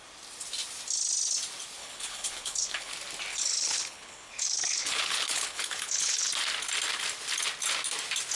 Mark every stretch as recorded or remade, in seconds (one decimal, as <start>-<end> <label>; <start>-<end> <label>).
0.0-1.8 recorded; 1.8-2.9 remade; 2.9-3.3 recorded; 3.3-6.3 remade; 6.3-8.3 recorded